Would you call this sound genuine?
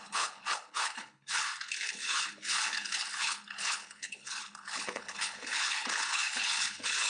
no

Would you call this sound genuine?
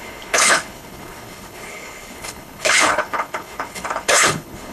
no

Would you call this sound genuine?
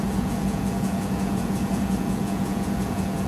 no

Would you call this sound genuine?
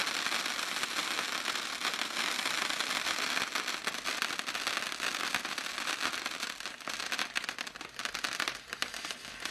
yes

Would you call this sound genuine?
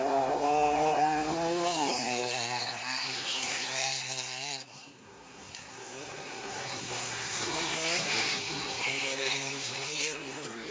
no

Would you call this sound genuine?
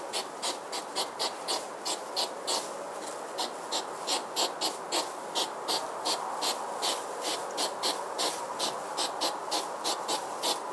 yes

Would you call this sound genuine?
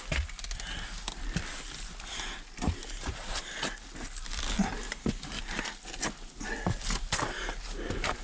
yes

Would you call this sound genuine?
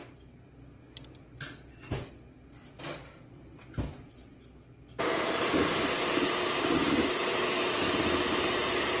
yes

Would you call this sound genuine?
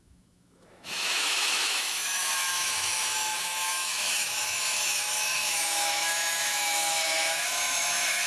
no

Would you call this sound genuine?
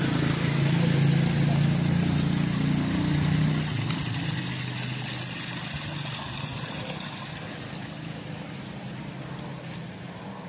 yes